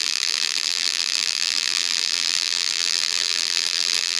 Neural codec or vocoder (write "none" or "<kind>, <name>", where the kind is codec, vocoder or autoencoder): vocoder, BigVGAN v2